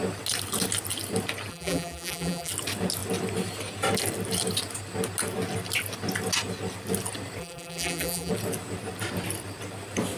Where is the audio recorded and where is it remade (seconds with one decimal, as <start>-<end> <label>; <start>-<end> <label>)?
0.0-1.5 recorded; 1.5-2.5 remade; 2.5-7.4 recorded; 7.4-8.3 remade; 8.3-10.2 recorded